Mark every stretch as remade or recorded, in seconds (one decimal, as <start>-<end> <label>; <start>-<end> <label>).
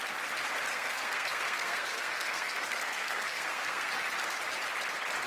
0.0-0.7 recorded; 0.7-3.9 remade; 3.9-5.3 recorded